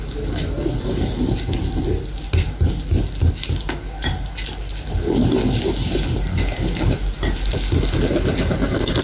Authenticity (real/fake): real